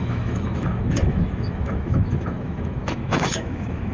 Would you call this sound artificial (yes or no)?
yes